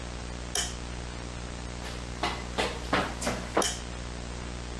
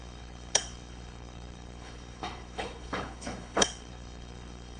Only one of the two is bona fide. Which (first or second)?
first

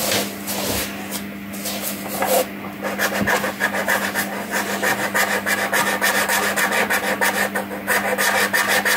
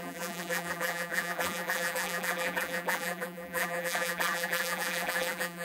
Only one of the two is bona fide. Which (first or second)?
first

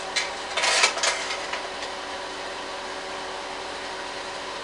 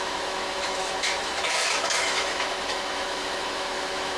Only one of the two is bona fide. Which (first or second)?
first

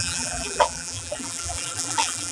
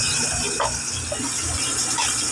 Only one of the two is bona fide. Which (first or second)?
second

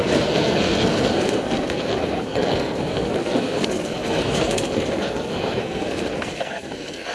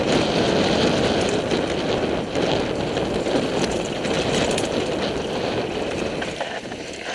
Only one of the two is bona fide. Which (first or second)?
second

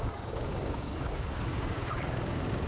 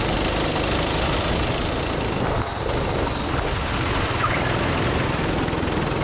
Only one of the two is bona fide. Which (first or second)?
second